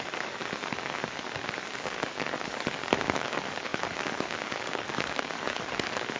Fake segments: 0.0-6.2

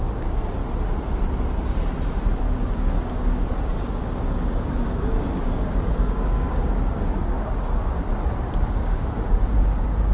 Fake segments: 0.0-0.6; 2.4-8.1; 8.7-10.1

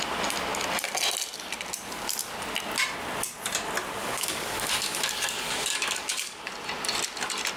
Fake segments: 4.0-6.5

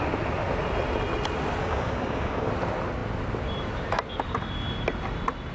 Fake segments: 1.6-2.5

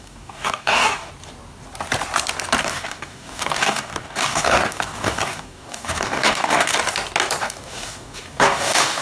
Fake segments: 0.0-1.1; 2.6-6.8; 7.4-9.0

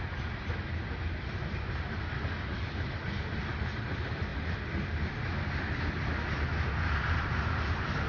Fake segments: none

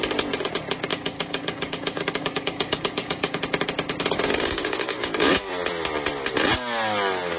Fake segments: 0.9-3.4; 4.3-5.5

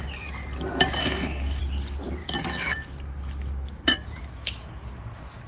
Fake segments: 1.0-1.6